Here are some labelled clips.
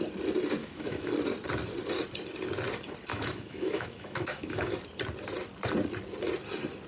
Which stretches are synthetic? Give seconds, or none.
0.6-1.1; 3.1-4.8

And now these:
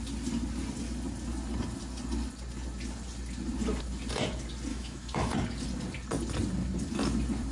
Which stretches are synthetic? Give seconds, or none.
4.7-5.3

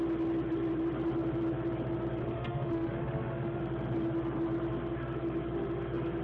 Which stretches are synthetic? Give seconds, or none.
2.2-3.6

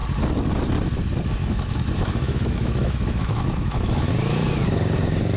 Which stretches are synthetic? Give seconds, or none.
1.4-4.1

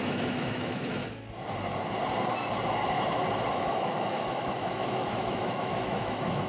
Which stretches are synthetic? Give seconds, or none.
0.0-1.0; 3.5-6.5

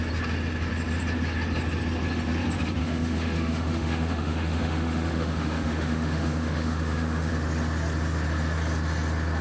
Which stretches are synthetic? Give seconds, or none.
2.8-7.3

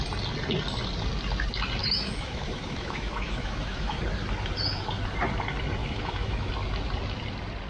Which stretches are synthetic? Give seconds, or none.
1.8-4.0; 5.8-6.5